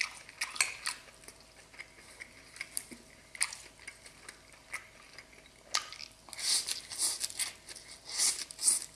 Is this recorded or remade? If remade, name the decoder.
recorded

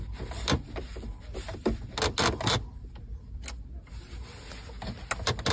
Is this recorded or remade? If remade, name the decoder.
recorded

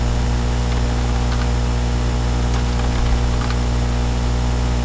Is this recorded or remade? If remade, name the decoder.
recorded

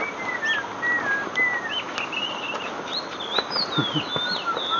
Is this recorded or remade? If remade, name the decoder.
recorded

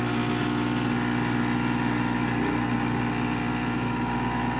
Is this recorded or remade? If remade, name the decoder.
recorded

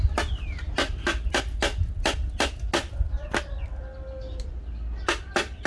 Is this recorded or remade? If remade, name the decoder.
recorded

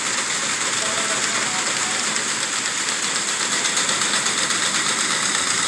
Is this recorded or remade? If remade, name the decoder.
recorded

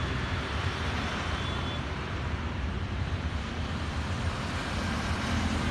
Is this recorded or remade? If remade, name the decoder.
remade, vocoder, BigVGAN v2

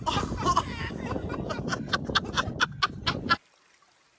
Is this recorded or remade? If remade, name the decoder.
recorded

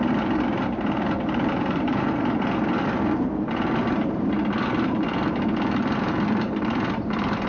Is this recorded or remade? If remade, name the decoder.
remade, vocoder, BigVGAN v2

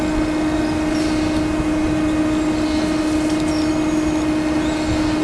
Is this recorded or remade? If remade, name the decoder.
recorded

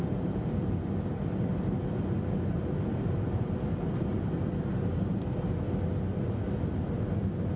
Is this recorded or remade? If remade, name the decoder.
recorded